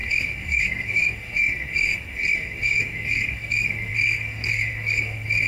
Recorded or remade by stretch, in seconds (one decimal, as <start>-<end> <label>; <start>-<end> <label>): 0.0-5.5 remade